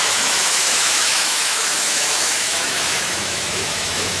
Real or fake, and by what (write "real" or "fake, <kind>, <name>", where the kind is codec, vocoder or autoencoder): fake, autoencoder, DAC-VAE